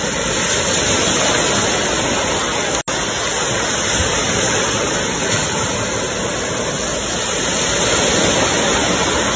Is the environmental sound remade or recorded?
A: recorded